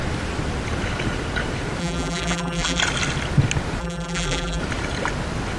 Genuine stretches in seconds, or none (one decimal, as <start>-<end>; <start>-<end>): 0.0-1.8; 2.8-3.8; 4.6-5.6